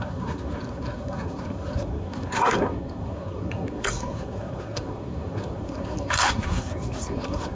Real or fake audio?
fake